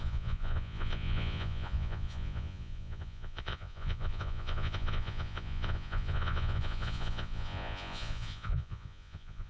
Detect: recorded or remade remade